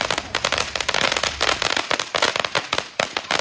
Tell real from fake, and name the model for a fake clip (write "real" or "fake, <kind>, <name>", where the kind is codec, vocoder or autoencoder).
real